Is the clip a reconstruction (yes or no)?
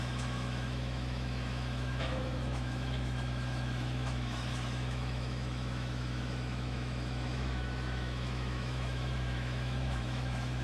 yes